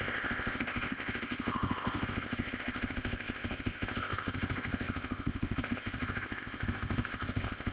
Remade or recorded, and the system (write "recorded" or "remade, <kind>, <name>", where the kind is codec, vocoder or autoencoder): remade, codec, ZipCodec